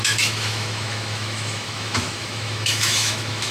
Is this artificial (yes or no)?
yes